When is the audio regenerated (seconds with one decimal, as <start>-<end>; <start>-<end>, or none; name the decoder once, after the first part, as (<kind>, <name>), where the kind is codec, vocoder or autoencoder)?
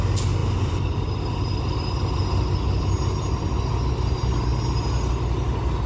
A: none